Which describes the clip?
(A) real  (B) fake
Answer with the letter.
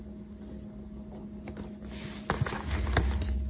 A